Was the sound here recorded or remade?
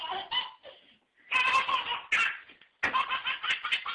recorded